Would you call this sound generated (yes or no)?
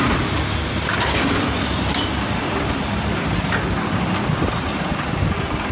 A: no